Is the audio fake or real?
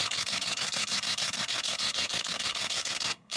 fake